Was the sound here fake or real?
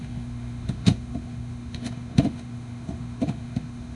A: fake